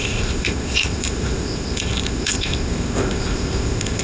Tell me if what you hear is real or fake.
fake